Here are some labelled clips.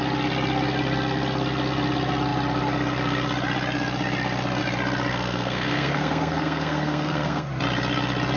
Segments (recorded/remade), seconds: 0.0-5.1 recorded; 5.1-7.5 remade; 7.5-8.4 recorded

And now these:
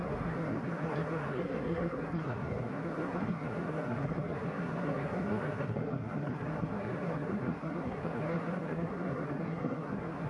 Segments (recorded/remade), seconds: 0.0-10.3 remade

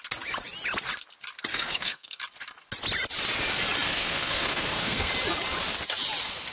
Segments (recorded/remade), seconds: 0.0-1.5 recorded; 1.5-2.2 remade; 2.2-3.9 recorded; 3.9-5.1 remade; 5.1-6.5 recorded

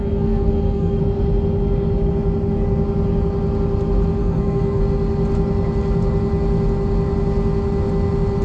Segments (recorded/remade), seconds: 0.0-1.0 remade; 1.0-4.2 recorded; 4.2-4.8 remade; 4.8-8.4 recorded

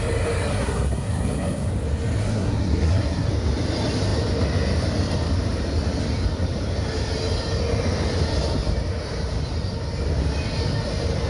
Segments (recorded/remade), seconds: 0.0-0.5 recorded; 0.5-1.7 remade; 1.7-2.2 recorded; 2.2-3.3 remade; 3.3-11.3 recorded

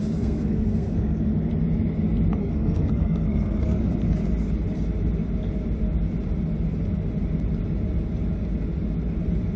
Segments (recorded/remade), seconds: 0.0-1.3 remade; 1.3-2.4 recorded; 2.4-3.8 remade; 3.8-9.6 recorded

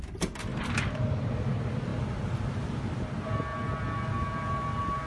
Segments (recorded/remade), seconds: 0.0-5.1 recorded

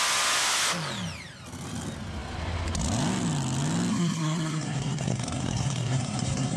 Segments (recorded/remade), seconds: 0.0-3.9 recorded; 3.9-6.6 remade